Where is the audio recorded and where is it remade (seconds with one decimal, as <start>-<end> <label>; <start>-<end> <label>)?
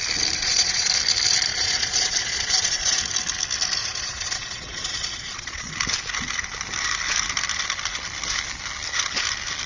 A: 0.0-0.4 recorded; 0.4-0.9 remade; 0.9-1.5 recorded; 1.5-3.0 remade; 3.0-3.8 recorded; 3.8-5.7 remade; 5.7-9.7 recorded